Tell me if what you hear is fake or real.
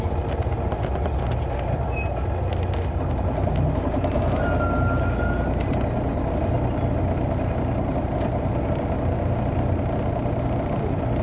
real